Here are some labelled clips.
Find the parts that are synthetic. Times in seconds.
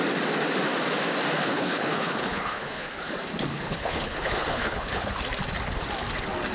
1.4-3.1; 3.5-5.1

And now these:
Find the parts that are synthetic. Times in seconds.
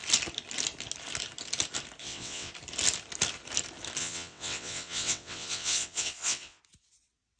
2.0-2.5; 4.0-6.6